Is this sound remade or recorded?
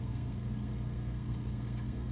remade